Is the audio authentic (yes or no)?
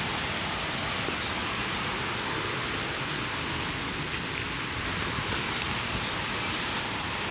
yes